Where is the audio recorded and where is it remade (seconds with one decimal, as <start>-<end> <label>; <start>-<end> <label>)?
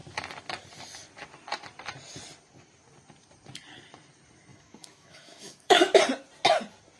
0.0-4.5 recorded; 4.5-6.0 remade; 6.0-7.0 recorded